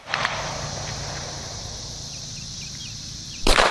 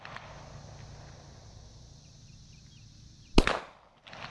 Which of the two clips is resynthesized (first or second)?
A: first